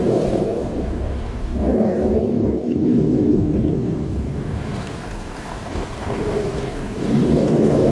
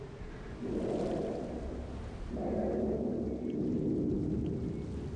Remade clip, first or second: first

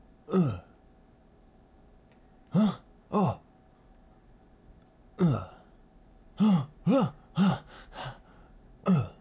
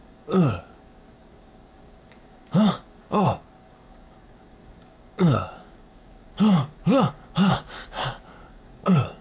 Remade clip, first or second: second